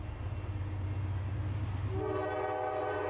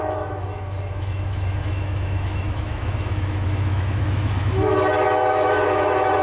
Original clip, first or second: first